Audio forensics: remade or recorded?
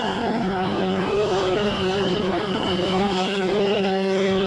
remade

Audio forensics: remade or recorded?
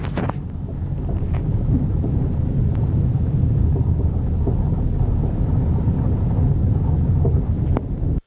recorded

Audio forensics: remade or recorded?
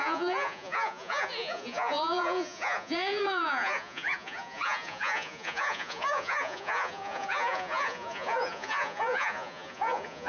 remade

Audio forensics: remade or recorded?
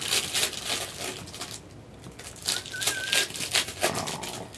recorded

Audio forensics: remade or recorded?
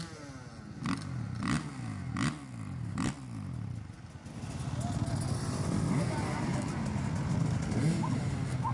recorded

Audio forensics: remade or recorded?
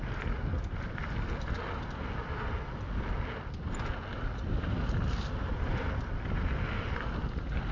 recorded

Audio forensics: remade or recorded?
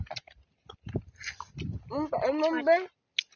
recorded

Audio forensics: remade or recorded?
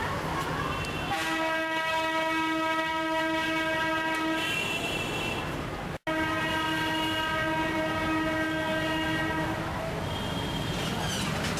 recorded